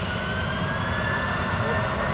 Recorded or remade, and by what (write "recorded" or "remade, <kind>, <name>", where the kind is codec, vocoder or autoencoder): recorded